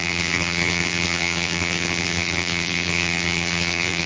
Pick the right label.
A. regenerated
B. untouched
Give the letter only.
A